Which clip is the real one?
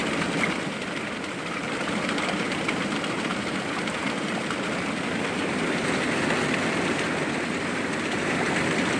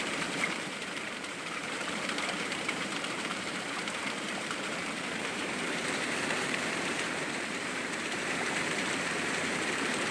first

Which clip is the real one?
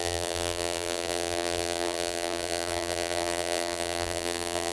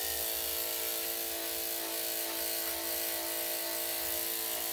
second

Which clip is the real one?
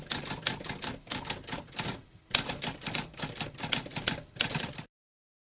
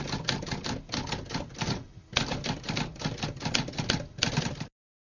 second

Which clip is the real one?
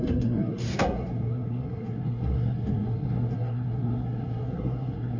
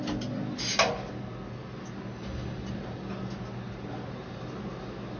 second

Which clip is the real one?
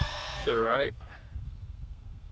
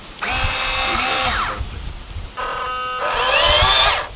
second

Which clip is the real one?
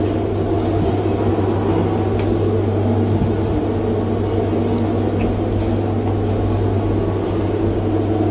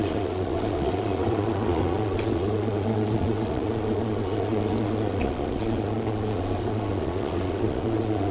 first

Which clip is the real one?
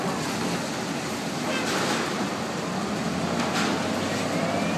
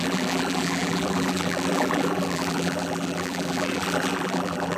first